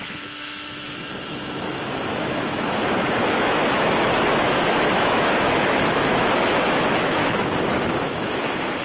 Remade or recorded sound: remade